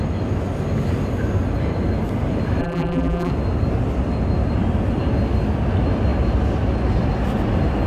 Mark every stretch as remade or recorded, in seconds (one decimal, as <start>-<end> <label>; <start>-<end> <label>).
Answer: 0.0-2.6 recorded; 2.6-3.3 remade; 3.3-7.9 recorded